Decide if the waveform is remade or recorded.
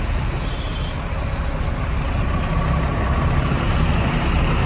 recorded